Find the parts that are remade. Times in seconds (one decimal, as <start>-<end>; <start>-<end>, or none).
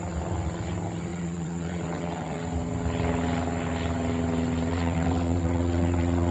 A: 1.1-2.4; 4.7-6.3